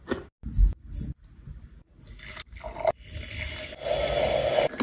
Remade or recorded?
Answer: recorded